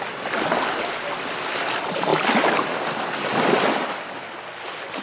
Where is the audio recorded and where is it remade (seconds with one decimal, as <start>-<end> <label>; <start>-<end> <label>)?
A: 0.0-5.0 recorded